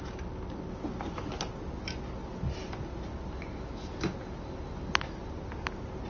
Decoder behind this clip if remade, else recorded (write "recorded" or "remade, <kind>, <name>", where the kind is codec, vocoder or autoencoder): recorded